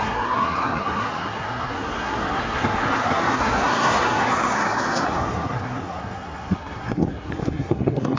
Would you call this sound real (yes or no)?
no